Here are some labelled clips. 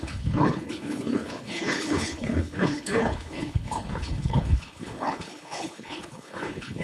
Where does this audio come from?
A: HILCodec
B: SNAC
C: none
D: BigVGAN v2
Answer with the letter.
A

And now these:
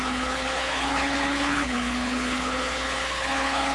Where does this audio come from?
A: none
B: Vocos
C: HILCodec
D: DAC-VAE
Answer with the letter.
C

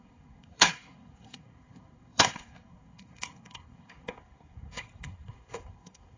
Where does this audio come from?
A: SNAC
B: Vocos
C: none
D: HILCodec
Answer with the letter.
A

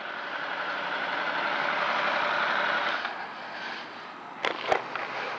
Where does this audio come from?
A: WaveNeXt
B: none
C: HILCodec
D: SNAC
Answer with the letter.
B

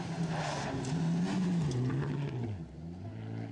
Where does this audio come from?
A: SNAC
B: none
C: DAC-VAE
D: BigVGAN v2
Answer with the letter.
B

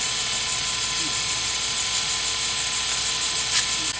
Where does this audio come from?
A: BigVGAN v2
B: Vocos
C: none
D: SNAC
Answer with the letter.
C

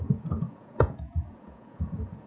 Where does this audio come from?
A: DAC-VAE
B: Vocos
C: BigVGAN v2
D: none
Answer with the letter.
B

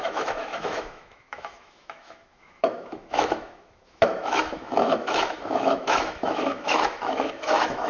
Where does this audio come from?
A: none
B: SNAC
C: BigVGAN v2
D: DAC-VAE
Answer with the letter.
D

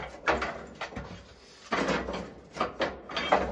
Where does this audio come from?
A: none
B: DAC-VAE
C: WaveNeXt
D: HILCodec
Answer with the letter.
A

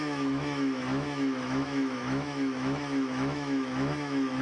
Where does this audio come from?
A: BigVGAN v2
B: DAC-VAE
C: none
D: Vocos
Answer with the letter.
B